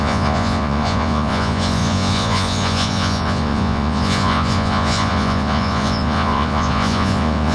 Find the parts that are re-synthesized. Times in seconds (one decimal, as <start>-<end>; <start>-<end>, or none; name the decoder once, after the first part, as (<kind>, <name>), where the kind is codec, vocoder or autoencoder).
0.0-7.5 (vocoder, Vocos)